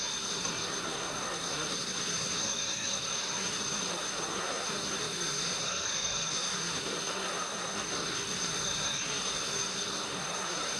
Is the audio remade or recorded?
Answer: remade